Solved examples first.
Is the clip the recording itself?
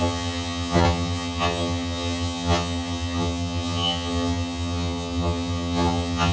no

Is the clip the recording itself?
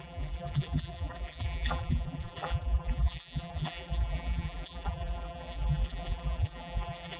no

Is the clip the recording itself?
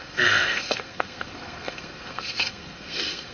no